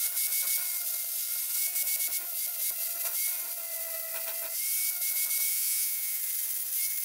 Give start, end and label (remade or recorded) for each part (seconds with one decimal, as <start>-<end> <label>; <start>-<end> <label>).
0.0-5.5 recorded; 5.5-6.2 remade; 6.2-7.0 recorded